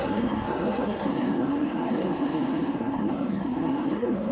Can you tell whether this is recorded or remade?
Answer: remade